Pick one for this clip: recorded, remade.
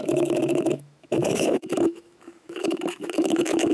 remade